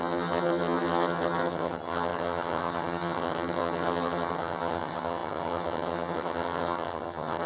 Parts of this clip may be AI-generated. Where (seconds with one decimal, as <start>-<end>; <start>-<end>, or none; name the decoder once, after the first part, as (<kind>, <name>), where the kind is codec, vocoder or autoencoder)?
0.0-7.5 (vocoder, HiFi-GAN)